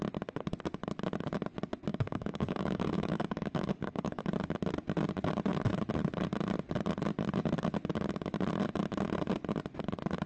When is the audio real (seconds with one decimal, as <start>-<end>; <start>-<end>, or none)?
0.0-1.9; 4.2-10.3